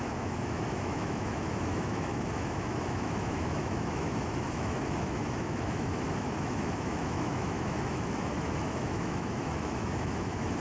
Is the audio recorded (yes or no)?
no